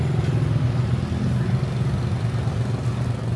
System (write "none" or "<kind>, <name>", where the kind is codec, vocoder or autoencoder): none